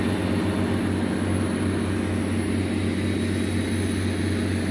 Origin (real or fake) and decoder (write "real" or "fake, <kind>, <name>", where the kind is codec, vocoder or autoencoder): real